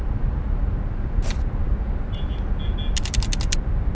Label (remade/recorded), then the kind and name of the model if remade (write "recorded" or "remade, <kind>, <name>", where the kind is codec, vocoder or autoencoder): recorded